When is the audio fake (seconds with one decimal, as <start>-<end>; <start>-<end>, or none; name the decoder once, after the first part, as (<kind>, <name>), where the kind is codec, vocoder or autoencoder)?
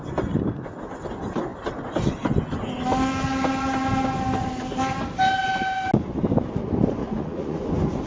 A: 7.0-7.6 (vocoder, Vocos)